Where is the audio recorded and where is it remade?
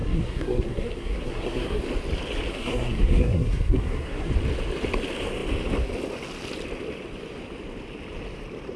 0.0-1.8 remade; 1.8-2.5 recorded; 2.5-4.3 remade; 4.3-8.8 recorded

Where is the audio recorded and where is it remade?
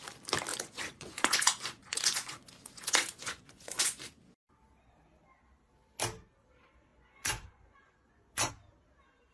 0.0-0.5 recorded; 0.5-4.0 remade; 4.0-6.9 recorded; 6.9-8.5 remade; 8.5-9.3 recorded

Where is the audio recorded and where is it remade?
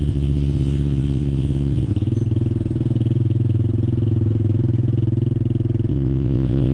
0.0-1.9 remade; 1.9-5.9 recorded; 5.9-6.7 remade